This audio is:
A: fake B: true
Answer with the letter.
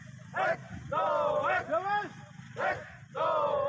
B